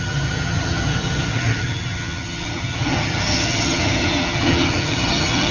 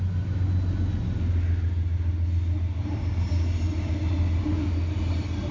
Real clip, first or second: second